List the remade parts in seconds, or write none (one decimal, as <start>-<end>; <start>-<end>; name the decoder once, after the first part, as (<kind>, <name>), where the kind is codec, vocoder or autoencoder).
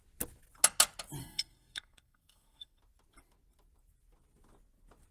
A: 1.2-2.8 (codec, SNAC)